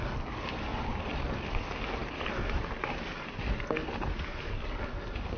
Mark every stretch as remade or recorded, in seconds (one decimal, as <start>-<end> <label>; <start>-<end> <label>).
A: 0.0-0.7 recorded; 0.7-1.5 remade; 1.5-5.4 recorded